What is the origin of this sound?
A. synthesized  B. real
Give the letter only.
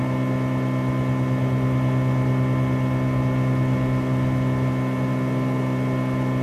B